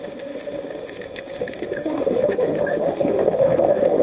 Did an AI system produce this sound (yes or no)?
yes